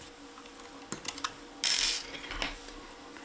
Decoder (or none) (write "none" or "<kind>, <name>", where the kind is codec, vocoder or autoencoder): none